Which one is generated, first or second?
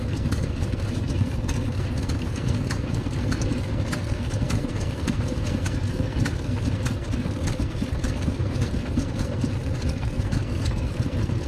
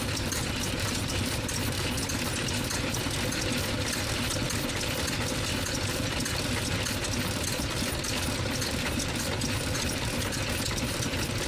first